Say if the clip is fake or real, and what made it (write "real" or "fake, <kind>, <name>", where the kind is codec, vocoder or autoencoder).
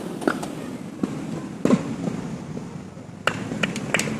real